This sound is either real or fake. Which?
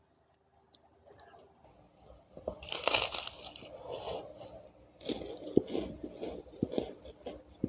real